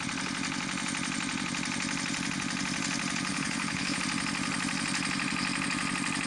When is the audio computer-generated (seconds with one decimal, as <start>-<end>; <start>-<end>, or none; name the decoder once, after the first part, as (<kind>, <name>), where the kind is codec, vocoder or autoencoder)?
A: 3.3-4.0 (codec, HILCodec)